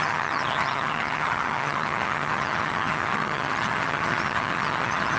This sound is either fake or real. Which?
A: fake